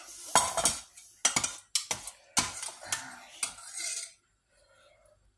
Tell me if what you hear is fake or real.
real